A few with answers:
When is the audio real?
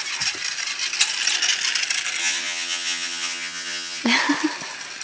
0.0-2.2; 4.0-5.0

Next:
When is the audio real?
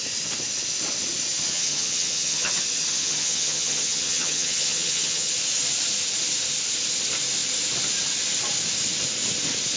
0.0-1.5; 2.5-2.9; 5.3-9.8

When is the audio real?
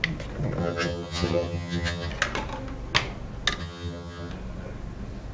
0.0-0.6; 2.1-3.6; 4.3-5.3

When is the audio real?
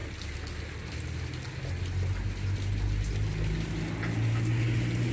0.0-5.1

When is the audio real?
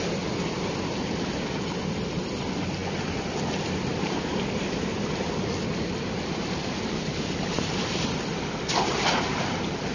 0.0-9.9